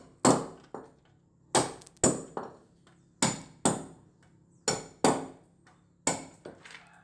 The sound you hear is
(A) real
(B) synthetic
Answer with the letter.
A